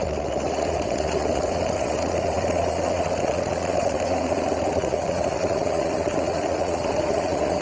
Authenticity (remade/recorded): remade